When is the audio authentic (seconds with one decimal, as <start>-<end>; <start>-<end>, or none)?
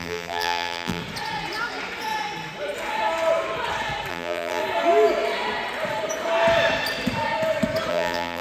1.0-4.1; 4.6-7.9